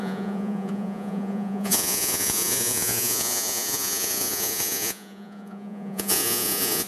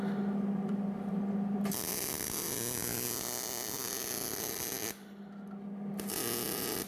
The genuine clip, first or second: second